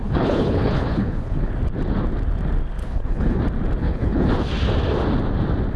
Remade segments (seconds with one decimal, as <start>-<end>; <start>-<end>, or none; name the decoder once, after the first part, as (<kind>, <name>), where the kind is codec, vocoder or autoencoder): 0.0-1.5 (codec, HILCodec); 2.8-3.4; 3.8-4.3